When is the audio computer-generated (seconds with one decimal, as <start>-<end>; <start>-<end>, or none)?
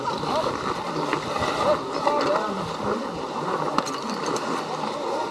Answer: none